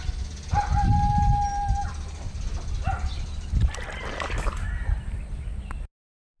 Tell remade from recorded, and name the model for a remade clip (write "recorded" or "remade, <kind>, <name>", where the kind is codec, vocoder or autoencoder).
recorded